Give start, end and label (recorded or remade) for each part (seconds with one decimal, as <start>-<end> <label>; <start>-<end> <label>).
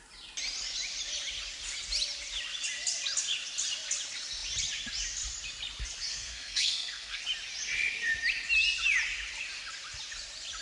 0.0-6.1 recorded; 6.1-7.2 remade; 7.2-10.6 recorded